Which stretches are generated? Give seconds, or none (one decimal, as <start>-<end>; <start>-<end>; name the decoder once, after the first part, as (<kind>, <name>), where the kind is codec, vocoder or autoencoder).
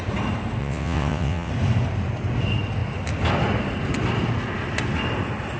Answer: 0.6-1.5 (vocoder, WaveNeXt)